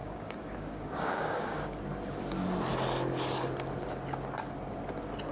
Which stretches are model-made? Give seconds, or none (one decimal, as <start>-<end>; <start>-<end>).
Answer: 0.0-1.8